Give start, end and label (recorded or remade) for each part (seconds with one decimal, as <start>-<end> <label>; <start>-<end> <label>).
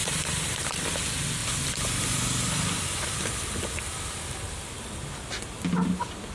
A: 0.0-0.6 remade; 0.6-1.4 recorded; 1.4-3.8 remade; 3.8-6.3 recorded